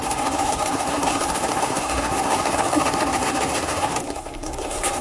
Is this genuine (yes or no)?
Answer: no